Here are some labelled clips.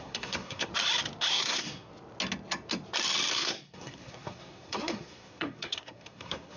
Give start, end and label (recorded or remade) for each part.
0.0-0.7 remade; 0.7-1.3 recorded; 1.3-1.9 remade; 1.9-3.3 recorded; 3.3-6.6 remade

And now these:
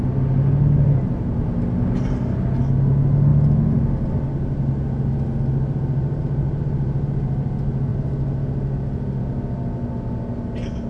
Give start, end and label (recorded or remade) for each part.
0.0-10.9 recorded

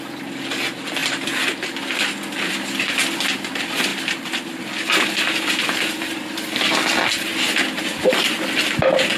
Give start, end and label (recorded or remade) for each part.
0.0-3.9 recorded; 3.9-4.6 remade; 4.6-9.2 recorded